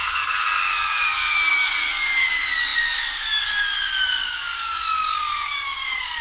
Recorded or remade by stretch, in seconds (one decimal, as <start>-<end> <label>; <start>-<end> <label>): 0.0-6.2 remade